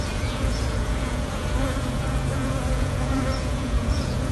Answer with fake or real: fake